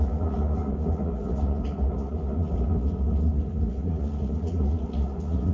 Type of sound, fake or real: fake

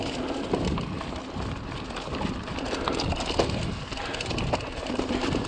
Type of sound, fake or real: real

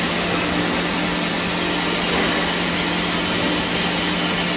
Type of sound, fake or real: real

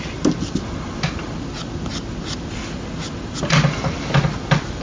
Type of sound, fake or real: real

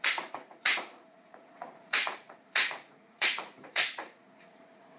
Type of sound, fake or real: fake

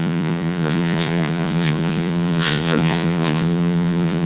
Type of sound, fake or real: fake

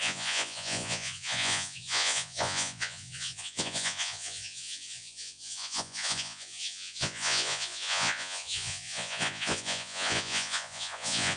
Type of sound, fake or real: fake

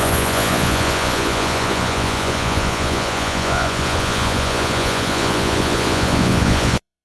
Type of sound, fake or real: fake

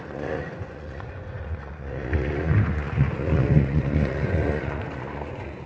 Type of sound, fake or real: fake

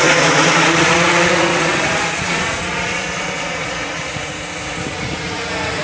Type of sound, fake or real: fake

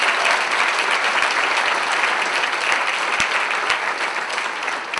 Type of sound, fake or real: real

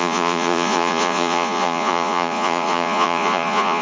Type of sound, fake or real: fake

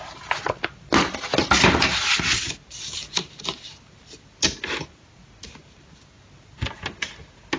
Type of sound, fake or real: real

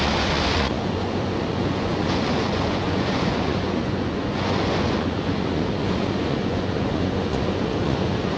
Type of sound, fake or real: fake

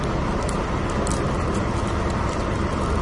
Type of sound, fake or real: real